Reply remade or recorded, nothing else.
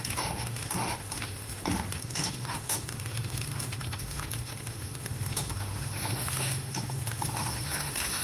remade